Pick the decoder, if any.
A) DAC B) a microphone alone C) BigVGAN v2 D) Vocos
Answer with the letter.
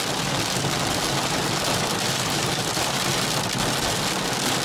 B